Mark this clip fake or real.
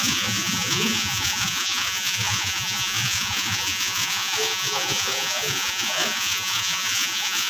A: fake